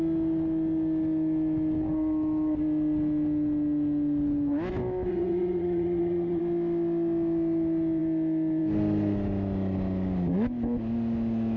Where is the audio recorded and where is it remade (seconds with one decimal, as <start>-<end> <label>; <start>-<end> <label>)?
0.0-5.1 recorded; 5.1-6.4 remade; 6.4-11.6 recorded